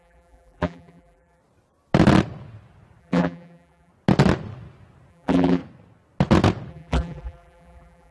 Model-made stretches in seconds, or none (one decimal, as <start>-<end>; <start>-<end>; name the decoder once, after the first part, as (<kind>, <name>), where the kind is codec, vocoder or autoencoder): 0.0-1.4 (vocoder, BigVGAN v2); 3.0-3.9; 5.1-5.6; 6.7-8.1